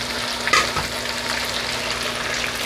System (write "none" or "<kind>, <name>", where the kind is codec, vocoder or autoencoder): none